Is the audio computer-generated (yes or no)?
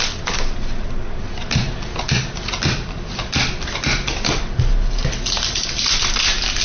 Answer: no